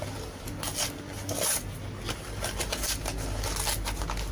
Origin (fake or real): real